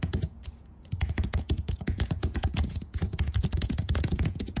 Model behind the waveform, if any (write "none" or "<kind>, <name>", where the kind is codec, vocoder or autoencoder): vocoder, Vocos